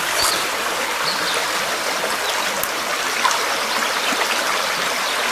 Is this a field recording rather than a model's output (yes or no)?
no